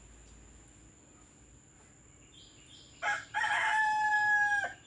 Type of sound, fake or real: real